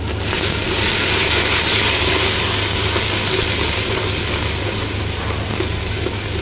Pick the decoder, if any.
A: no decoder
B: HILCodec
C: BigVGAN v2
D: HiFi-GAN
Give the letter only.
A